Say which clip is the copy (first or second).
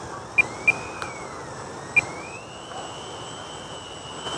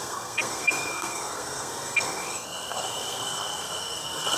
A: second